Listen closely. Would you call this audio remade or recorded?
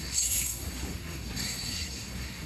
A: remade